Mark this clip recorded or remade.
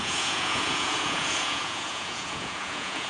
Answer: remade